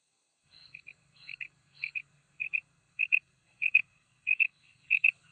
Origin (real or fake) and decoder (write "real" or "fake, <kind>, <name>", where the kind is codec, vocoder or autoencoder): fake, codec, SNAC